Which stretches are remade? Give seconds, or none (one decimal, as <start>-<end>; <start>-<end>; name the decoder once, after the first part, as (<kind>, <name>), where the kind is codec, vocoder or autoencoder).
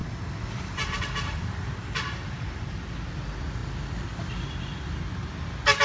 0.0-2.8 (vocoder, BigVGAN v2)